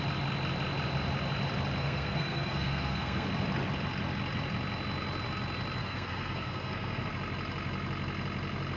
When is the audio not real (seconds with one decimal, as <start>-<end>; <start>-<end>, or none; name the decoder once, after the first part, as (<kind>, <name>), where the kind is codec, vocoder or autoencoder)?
1.8-3.3 (codec, SNAC); 5.8-7.1